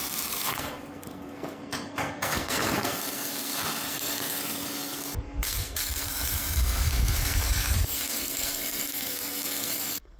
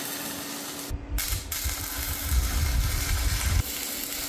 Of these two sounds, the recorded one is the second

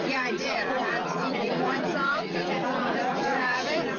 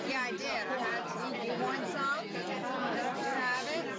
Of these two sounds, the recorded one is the second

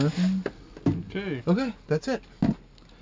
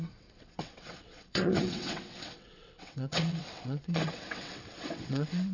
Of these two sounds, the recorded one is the first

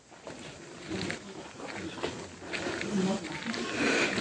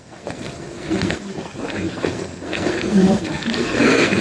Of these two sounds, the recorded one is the first